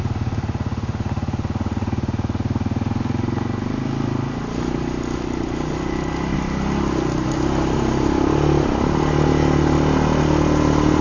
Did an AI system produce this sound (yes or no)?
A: no